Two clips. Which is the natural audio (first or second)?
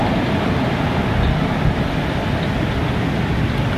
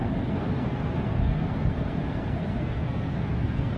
first